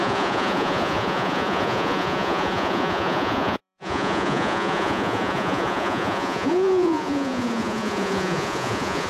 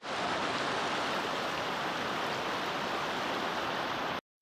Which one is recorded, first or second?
second